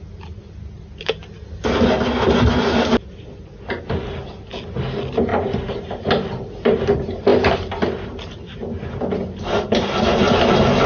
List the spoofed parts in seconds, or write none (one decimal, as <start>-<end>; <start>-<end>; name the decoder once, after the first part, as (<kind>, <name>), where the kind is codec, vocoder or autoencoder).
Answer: none